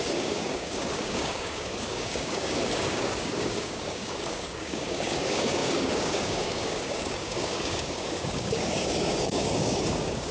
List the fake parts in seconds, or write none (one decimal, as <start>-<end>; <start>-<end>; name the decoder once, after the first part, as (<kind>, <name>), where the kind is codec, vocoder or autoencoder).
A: 0.0-10.3 (codec, DAC)